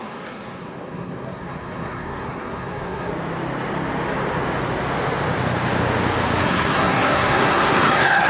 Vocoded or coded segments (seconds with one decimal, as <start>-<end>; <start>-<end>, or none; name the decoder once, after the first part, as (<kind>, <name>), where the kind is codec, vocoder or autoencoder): 0.0-3.1 (codec, SNAC); 6.4-8.3